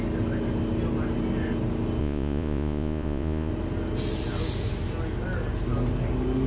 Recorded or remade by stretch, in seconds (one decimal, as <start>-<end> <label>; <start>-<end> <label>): 0.0-2.0 recorded; 2.0-3.5 remade; 3.5-6.5 recorded